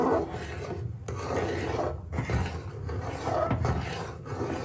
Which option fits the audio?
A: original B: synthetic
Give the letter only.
A